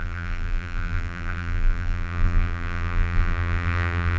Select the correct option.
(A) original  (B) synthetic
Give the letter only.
B